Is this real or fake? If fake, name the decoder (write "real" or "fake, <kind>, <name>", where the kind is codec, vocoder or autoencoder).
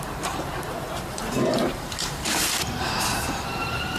fake, vocoder, BigVGAN v2